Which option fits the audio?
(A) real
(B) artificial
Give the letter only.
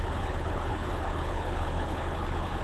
B